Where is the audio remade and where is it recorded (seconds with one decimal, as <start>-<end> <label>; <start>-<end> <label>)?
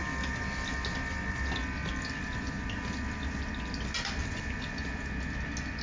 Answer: 0.0-5.8 recorded